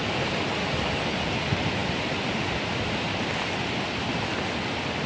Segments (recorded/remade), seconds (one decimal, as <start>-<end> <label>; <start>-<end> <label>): 0.0-5.1 recorded